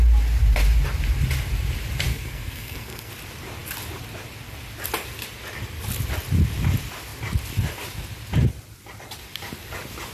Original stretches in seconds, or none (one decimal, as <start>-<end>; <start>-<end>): 0.0-2.1; 3.1-10.1